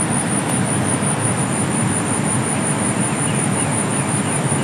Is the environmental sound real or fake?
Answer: real